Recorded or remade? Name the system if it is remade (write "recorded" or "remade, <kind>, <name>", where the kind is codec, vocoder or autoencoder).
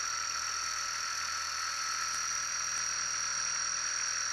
recorded